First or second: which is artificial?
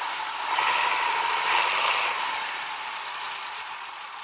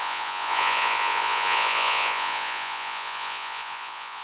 second